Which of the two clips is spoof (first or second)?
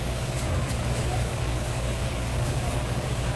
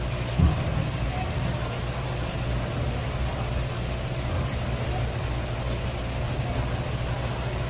first